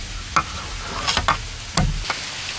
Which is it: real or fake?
real